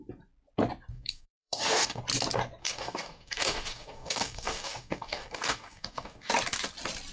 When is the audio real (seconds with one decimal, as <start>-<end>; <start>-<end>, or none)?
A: 0.0-0.9; 2.0-2.6; 6.3-7.1